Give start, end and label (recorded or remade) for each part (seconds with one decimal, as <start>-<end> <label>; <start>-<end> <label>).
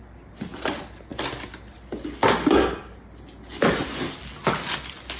0.0-5.2 recorded